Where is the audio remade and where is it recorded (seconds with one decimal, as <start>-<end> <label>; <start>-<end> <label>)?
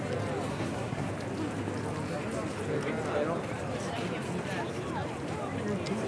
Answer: 0.0-0.5 recorded; 0.5-1.1 remade; 1.1-6.1 recorded